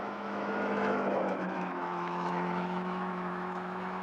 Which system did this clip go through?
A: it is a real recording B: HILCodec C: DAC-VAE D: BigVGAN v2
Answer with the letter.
C